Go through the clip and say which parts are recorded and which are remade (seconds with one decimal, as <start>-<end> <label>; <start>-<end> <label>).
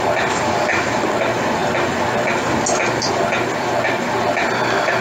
0.0-5.0 recorded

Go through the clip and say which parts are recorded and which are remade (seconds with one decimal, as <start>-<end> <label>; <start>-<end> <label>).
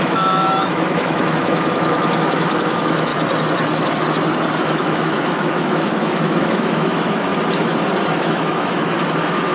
0.0-3.1 remade; 3.1-4.6 recorded; 4.6-7.3 remade; 7.3-8.1 recorded; 8.1-9.5 remade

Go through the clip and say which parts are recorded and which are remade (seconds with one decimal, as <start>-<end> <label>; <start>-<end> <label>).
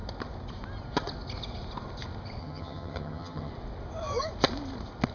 0.0-2.4 recorded; 2.4-3.5 remade; 3.5-5.1 recorded